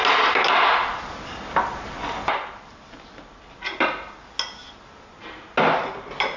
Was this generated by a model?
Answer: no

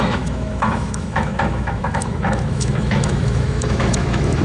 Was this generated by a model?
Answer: yes